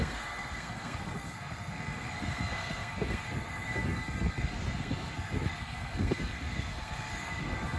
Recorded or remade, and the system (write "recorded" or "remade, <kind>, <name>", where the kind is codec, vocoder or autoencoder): remade, codec, SNAC